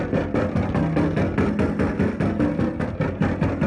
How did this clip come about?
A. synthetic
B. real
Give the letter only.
B